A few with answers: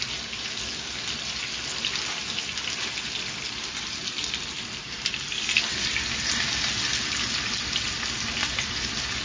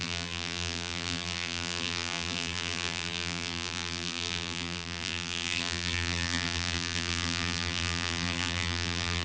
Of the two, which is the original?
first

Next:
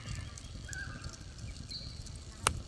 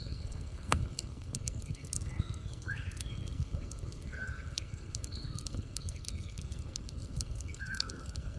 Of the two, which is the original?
first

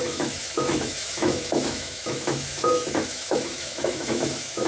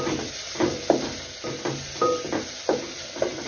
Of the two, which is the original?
second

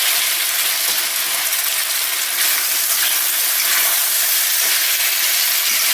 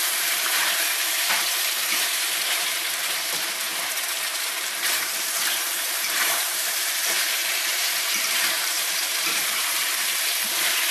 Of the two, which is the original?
first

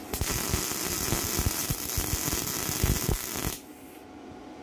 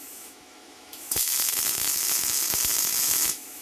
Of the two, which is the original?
first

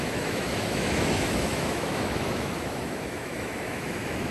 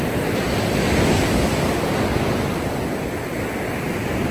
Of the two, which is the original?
second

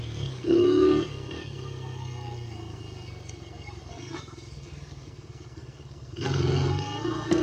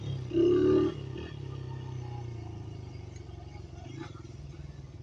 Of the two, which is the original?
second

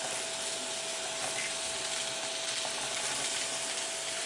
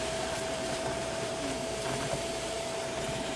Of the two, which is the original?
first